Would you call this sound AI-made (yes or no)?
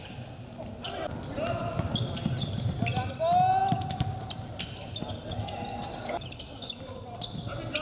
no